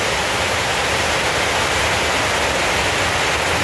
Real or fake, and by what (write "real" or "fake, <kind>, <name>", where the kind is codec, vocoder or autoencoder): real